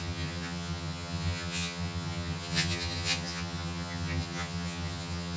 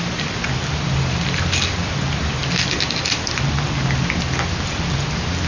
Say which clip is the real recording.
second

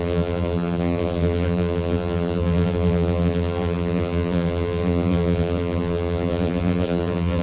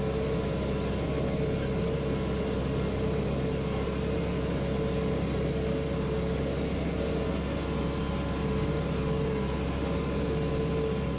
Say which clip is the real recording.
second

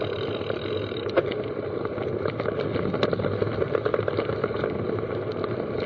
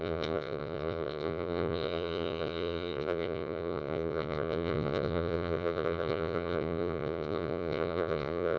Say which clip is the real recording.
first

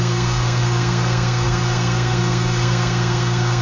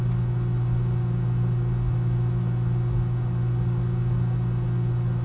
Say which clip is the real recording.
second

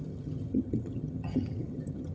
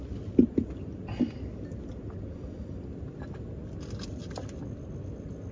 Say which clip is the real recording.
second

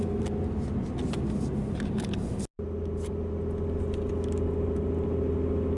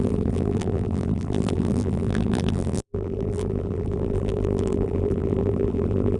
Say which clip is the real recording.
first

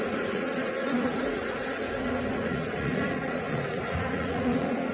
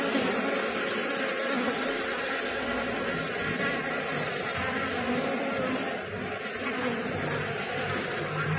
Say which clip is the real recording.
second